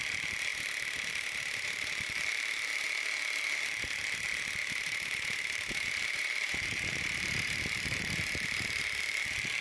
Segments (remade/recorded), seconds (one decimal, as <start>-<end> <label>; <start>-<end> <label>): 0.0-0.5 recorded; 0.5-2.1 remade; 2.1-4.6 recorded; 4.6-7.6 remade; 7.6-9.6 recorded